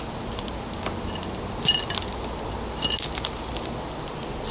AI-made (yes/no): no